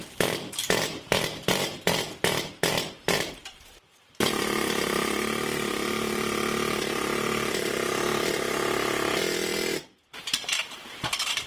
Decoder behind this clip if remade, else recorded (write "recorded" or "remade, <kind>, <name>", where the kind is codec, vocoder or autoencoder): remade, vocoder, BigVGAN v2